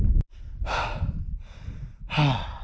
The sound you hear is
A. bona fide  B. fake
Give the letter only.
A